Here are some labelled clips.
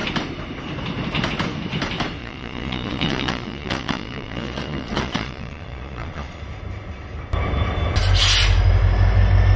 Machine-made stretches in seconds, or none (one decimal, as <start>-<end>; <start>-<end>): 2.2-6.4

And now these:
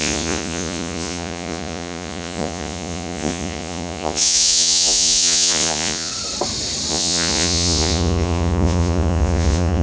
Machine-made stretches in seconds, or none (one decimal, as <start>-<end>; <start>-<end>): 0.0-6.1; 6.9-9.8

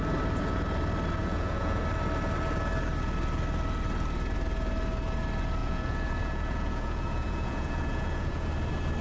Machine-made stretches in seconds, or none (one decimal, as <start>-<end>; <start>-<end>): 1.2-1.8; 5.6-8.5

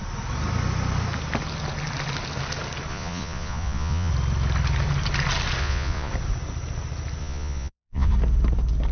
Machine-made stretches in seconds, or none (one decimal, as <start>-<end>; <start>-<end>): 2.9-4.1; 5.6-6.1; 7.2-8.1

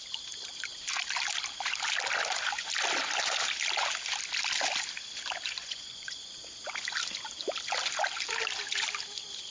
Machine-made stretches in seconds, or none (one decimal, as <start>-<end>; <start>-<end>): 5.6-6.3